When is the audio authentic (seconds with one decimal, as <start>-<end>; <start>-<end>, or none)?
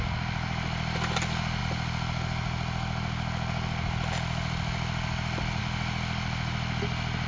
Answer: 0.0-7.3